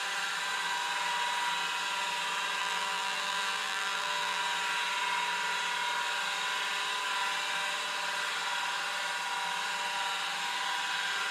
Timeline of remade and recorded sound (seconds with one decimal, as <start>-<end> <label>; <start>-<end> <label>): 0.0-2.6 recorded; 2.6-4.4 remade; 4.4-11.3 recorded

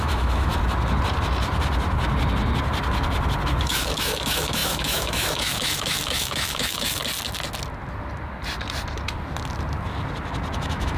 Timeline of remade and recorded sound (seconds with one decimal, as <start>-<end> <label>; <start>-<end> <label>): 0.0-0.5 remade; 0.5-3.6 recorded; 3.6-7.0 remade; 7.0-10.6 recorded; 10.6-11.0 remade

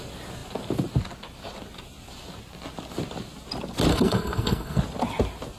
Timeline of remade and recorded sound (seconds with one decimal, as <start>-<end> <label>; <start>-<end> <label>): 0.0-3.9 recorded; 3.9-4.8 remade; 4.8-5.6 recorded

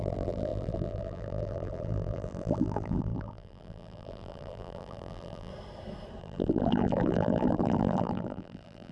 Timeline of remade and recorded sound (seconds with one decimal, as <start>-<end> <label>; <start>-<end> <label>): 0.0-5.5 remade; 5.5-6.2 recorded; 6.2-8.9 remade